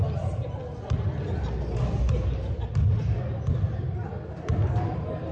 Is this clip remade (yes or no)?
no